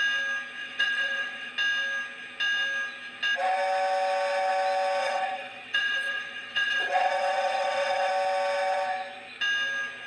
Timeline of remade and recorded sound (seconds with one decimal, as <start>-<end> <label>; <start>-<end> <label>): 0.0-0.6 recorded; 0.6-1.5 remade; 1.5-5.0 recorded; 5.0-8.1 remade; 8.1-10.1 recorded